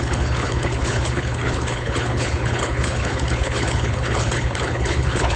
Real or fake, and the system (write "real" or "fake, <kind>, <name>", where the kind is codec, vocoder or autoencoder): fake, codec, HILCodec